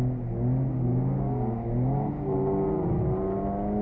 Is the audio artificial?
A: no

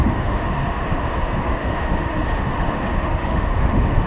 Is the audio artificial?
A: yes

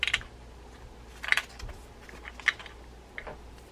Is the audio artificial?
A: no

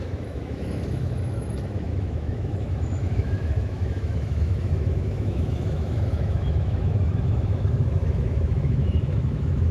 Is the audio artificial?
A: yes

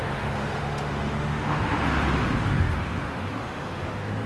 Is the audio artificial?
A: yes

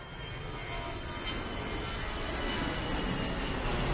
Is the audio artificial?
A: no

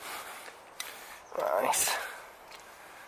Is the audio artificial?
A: no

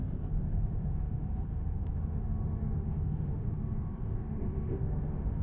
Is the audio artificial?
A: yes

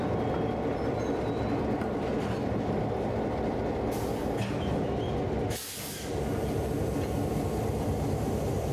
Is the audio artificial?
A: no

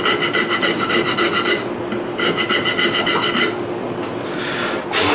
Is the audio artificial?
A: no